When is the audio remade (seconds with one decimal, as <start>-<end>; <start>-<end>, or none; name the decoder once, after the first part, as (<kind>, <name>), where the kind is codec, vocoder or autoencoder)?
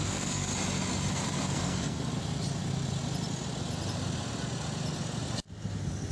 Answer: 0.0-0.5 (codec, SNAC); 1.1-2.1